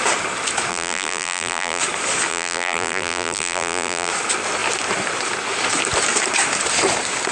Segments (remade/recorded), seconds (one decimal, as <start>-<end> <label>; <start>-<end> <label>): 0.0-0.7 recorded; 0.7-1.8 remade; 1.8-2.3 recorded; 2.3-4.1 remade; 4.1-7.3 recorded